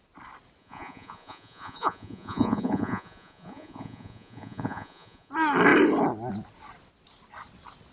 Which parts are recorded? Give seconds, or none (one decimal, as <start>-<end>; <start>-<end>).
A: 0.0-0.6; 5.3-7.9